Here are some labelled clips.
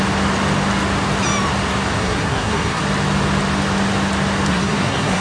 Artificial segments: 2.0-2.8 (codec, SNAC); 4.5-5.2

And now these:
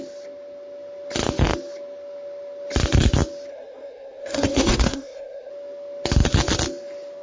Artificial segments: 3.5-5.5 (codec, SNAC)

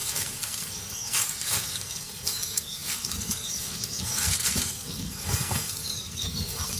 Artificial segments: 0.0-6.8 (codec, SNAC)

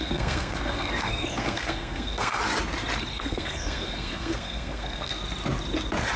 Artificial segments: 0.0-2.4 (codec, SNAC); 3.1-5.2

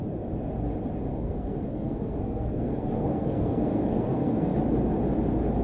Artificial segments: 1.1-4.5 (codec, SNAC)